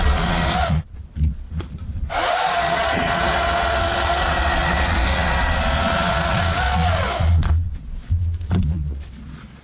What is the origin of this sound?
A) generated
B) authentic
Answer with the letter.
A